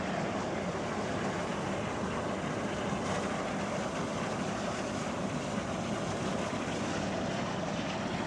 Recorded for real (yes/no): yes